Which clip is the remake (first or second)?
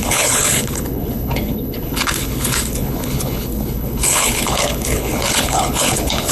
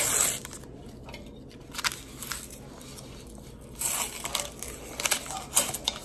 first